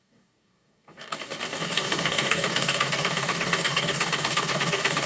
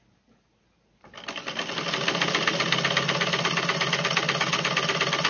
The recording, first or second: second